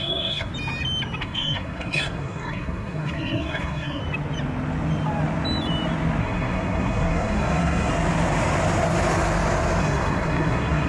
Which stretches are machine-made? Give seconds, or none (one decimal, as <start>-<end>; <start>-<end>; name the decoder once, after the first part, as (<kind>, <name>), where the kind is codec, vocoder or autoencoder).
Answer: 0.0-0.5 (codec, SNAC); 1.2-4.0; 6.2-7.9; 9.8-10.9